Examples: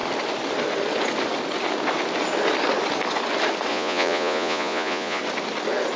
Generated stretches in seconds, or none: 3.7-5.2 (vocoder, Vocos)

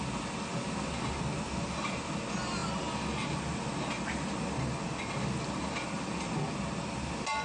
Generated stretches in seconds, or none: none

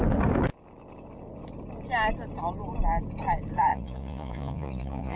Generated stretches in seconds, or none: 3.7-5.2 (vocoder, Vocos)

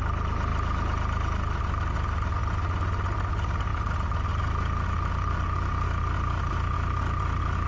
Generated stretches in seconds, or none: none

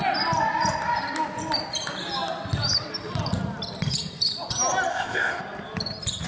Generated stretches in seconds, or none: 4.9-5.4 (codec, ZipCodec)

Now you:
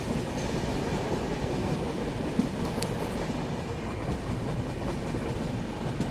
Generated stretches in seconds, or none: 1.4-2.0 (codec, SNAC)